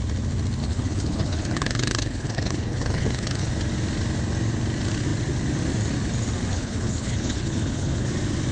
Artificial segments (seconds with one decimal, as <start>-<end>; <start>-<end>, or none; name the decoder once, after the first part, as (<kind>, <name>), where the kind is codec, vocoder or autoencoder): 0.6-3.5 (codec, HILCodec); 6.5-8.1